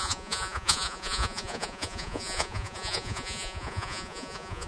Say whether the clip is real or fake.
fake